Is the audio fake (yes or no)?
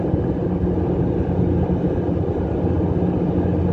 no